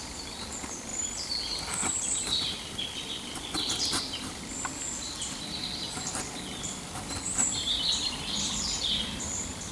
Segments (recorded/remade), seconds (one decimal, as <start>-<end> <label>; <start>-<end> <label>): 0.0-9.7 remade